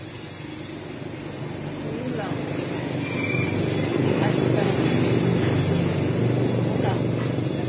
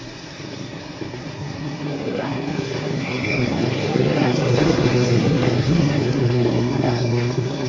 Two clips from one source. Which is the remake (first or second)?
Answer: second